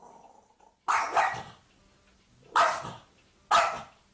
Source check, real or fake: real